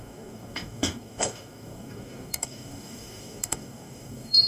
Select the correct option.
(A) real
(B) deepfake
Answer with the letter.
B